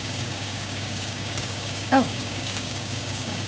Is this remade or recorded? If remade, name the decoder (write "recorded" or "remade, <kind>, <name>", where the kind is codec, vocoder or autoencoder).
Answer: remade, codec, DAC